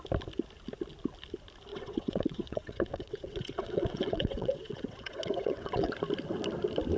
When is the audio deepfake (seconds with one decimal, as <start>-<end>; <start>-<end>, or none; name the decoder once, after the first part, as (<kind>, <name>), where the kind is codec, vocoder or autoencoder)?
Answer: 1.7-5.9 (vocoder, WaveNeXt)